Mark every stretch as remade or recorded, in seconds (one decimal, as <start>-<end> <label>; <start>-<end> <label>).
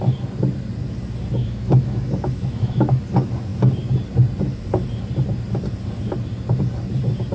0.0-1.4 recorded; 1.4-3.0 remade; 3.0-7.3 recorded